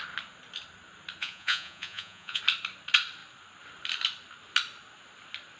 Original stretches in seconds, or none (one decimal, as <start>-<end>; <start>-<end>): 0.0-1.2; 2.4-5.6